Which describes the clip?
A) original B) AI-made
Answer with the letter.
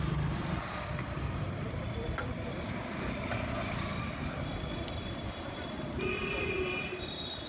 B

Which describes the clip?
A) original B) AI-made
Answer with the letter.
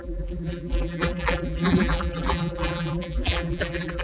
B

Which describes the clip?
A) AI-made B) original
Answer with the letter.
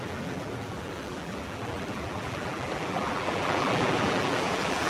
A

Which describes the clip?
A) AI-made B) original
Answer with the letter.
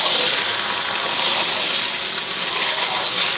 B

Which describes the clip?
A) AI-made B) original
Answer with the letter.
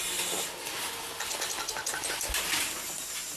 B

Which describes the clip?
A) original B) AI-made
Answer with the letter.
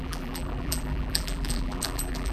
B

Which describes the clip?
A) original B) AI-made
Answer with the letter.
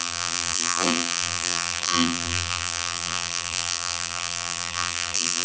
B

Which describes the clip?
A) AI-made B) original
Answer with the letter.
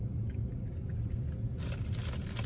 B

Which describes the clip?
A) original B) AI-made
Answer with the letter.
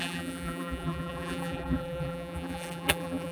B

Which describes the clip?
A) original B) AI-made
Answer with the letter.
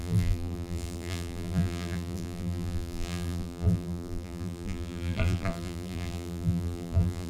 B